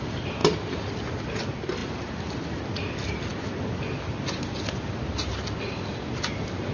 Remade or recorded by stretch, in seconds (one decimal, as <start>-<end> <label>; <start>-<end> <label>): 0.0-1.8 recorded; 1.8-2.6 remade; 2.6-6.7 recorded

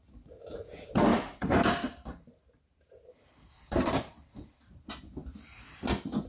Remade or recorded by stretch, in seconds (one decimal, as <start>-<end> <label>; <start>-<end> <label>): 0.0-1.1 recorded; 1.1-4.9 remade; 4.9-6.3 recorded

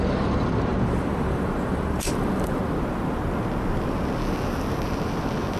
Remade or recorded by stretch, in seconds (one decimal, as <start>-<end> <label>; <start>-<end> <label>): 0.0-2.6 remade; 2.6-5.6 recorded

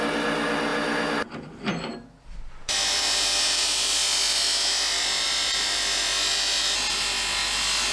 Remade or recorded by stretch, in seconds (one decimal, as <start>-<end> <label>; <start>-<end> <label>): 0.0-2.6 recorded; 2.6-6.0 remade; 6.0-7.9 recorded

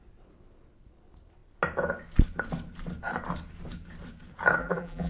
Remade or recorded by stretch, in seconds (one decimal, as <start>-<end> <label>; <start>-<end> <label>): 0.0-4.6 recorded; 4.6-5.1 remade